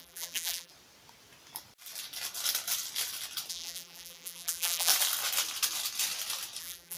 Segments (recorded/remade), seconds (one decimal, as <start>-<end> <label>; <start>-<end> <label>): 0.0-0.7 remade; 0.7-3.5 recorded; 3.5-4.9 remade; 4.9-6.6 recorded; 6.6-7.0 remade